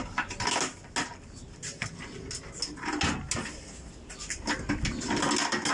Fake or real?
real